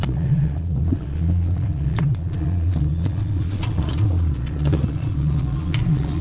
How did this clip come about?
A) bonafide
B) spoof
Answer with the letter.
B